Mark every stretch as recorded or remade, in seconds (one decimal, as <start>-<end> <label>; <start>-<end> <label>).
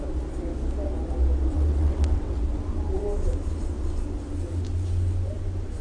0.0-1.5 recorded; 1.5-2.4 remade; 2.4-5.8 recorded